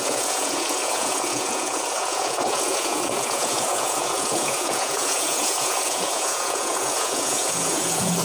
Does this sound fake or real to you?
fake